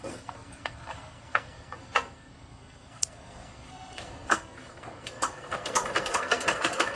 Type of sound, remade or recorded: remade